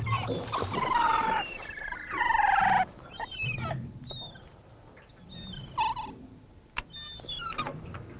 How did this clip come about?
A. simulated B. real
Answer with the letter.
B